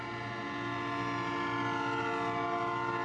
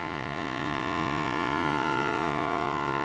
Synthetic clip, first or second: second